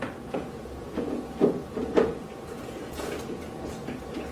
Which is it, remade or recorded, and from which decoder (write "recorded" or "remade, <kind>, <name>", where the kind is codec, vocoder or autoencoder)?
remade, vocoder, Vocos